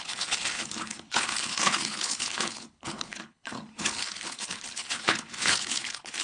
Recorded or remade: remade